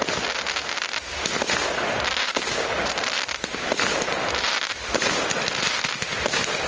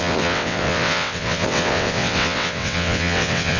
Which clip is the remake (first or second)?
second